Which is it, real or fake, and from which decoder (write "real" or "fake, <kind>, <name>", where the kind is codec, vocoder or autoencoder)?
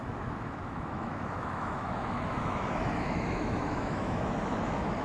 fake, autoencoder, DAC-VAE